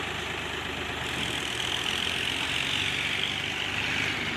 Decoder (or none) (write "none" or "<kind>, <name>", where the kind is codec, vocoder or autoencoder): none